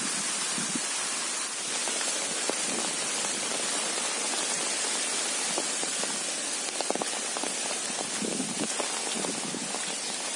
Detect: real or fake real